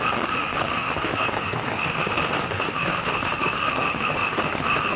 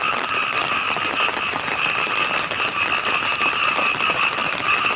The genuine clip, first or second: second